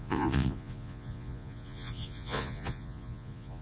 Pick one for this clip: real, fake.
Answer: fake